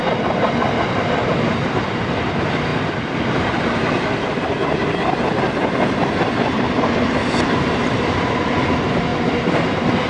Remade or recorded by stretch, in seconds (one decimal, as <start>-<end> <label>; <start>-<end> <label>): 0.0-10.1 recorded

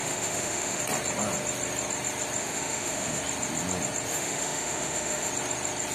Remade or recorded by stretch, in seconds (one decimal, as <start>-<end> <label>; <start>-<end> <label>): 0.0-0.8 remade; 0.8-2.4 recorded; 2.4-3.2 remade; 3.2-4.1 recorded; 4.1-5.3 remade; 5.3-5.9 recorded